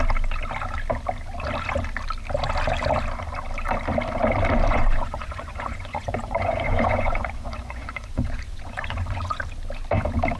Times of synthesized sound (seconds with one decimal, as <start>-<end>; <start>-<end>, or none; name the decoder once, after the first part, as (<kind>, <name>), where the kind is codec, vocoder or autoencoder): 4.7-9.4 (vocoder, Vocos)